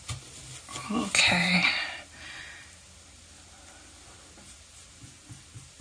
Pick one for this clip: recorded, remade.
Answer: recorded